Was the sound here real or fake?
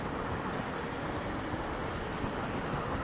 real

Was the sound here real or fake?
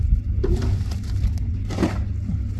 real